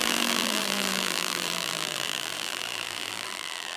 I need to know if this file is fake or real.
fake